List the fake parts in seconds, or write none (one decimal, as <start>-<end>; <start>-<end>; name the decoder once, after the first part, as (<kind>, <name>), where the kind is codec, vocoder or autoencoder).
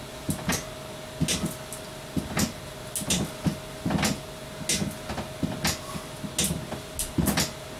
none